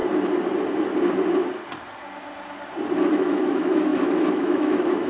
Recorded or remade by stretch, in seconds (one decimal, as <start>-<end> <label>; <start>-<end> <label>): 0.0-3.1 recorded; 3.1-5.1 remade